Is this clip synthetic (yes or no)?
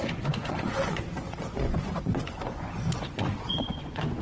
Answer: yes